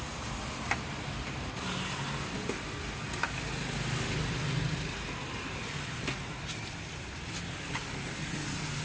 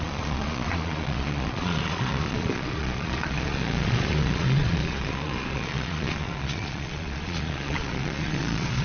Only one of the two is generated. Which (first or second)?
second